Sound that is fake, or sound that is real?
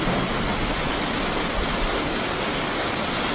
real